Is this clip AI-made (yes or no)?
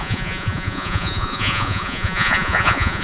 yes